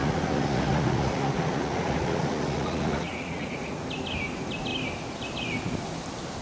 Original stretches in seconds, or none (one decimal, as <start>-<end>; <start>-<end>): 3.8-6.4